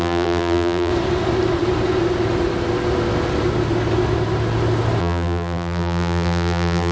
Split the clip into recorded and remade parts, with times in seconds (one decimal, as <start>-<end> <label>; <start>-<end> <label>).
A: 0.0-0.9 remade; 0.9-5.0 recorded; 5.0-6.9 remade